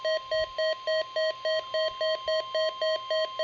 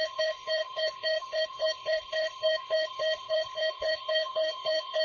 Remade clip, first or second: second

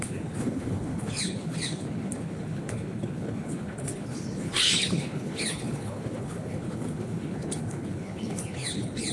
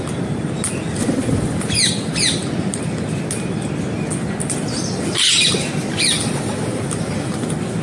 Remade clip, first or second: first